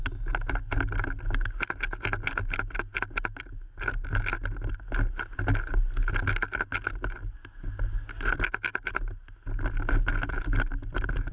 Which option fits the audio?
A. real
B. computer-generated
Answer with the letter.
A